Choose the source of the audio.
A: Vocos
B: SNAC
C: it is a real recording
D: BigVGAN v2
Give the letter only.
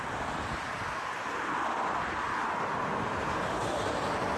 C